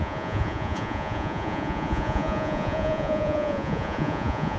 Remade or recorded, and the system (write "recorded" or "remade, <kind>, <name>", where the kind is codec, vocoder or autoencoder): remade, vocoder, Vocos